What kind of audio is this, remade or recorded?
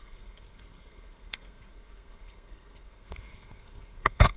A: remade